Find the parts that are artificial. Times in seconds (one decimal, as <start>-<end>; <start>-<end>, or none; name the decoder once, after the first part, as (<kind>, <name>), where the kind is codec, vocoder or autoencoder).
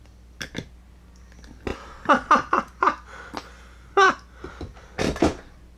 none